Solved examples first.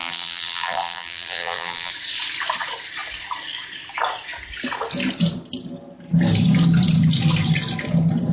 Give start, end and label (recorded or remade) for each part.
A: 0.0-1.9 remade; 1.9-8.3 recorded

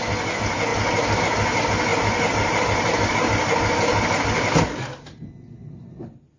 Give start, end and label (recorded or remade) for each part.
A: 0.0-6.4 recorded

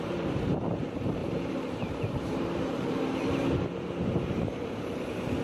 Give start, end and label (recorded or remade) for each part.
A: 0.0-5.4 remade